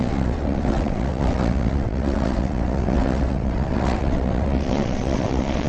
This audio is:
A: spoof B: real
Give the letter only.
A